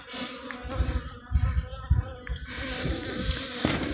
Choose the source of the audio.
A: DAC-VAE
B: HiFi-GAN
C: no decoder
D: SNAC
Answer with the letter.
C